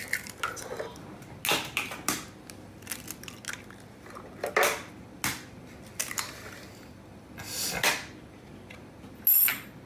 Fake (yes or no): no